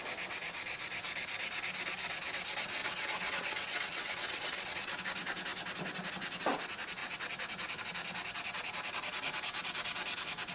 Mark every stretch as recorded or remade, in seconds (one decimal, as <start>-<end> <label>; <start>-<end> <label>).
0.0-2.8 recorded; 2.8-5.0 remade; 5.0-10.5 recorded